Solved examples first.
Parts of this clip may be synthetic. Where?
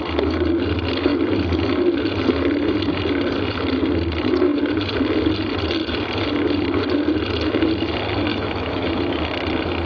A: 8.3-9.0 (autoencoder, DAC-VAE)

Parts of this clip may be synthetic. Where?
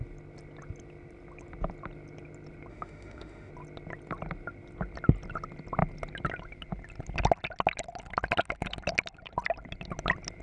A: 2.7-3.5 (autoencoder, DAC-VAE)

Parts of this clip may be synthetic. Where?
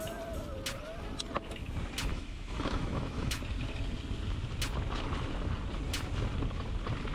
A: 2.1-3.4 (autoencoder, DAC-VAE)